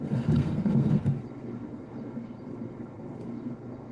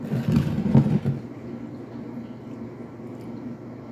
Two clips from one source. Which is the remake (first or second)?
first